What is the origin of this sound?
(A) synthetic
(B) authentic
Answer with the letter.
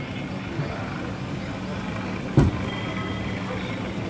B